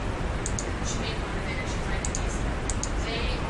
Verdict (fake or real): real